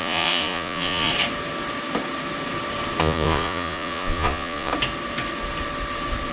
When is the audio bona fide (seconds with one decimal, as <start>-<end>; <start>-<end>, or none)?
1.1-3.0; 4.7-6.3